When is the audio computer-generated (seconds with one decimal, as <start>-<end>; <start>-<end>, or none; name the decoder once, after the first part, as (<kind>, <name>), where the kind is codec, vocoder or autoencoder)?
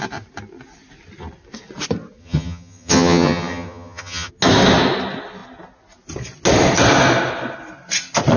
2.2-4.3 (vocoder, HiFi-GAN)